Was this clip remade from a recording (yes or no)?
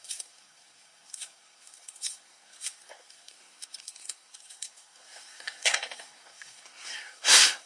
yes